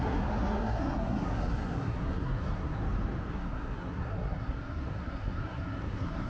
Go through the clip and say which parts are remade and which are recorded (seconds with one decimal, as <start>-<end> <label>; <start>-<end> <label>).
0.0-2.8 remade; 2.8-3.3 recorded; 3.3-6.3 remade